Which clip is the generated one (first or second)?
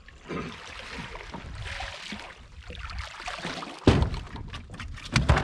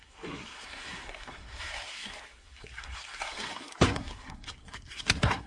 second